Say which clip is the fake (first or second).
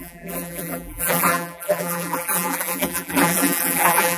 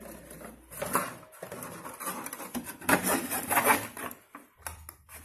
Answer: first